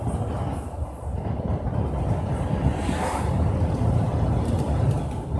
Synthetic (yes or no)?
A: no